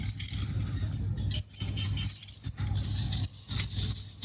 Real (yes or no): yes